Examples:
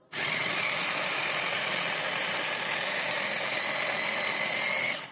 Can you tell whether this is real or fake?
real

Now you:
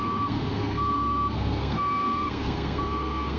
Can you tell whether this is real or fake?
fake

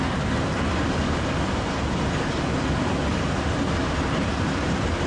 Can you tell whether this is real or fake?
real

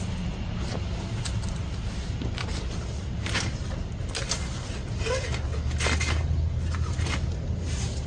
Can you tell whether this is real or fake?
real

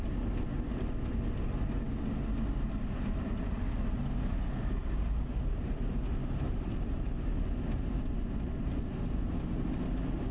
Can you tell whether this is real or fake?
real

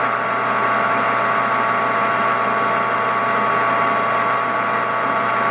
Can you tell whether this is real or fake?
real